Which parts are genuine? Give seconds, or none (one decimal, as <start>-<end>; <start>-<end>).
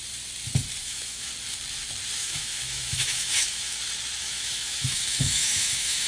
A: 0.0-0.8; 1.3-2.2; 3.8-4.2